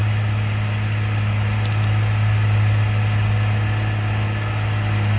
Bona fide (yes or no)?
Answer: yes